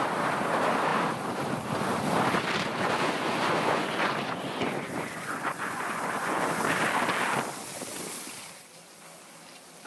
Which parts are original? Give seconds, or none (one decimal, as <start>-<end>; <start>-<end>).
0.0-2.7; 6.6-9.9